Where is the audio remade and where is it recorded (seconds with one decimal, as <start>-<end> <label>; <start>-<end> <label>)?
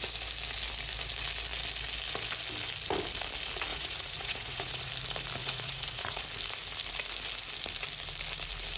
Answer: 0.0-3.7 recorded; 3.7-4.9 remade; 4.9-5.4 recorded; 5.4-6.2 remade; 6.2-8.8 recorded